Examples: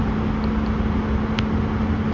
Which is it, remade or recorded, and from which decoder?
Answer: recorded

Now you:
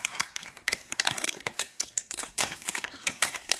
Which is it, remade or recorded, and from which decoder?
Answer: remade, codec, SNAC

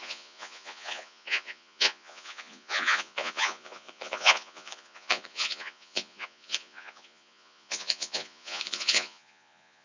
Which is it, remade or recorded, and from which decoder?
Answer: remade, vocoder, Vocos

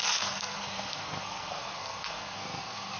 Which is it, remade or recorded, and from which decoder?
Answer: remade, codec, SNAC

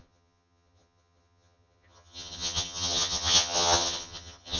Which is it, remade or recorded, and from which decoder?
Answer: remade, vocoder, HiFi-GAN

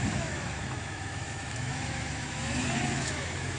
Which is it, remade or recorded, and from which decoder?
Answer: remade, autoencoder, DAC-VAE